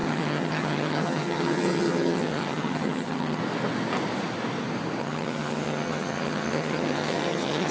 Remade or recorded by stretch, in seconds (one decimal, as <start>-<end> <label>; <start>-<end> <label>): 0.0-3.4 remade; 3.4-5.0 recorded; 5.0-7.7 remade